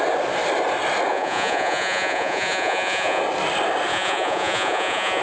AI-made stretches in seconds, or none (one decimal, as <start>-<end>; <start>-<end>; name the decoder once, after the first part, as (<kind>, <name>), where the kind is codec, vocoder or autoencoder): 1.1-3.2 (vocoder, Vocos); 3.9-5.2